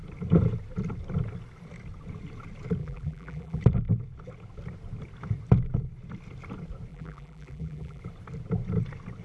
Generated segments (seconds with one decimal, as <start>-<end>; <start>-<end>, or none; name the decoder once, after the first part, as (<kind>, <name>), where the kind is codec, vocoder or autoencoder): 2.8-3.6 (vocoder, BigVGAN v2); 6.9-8.0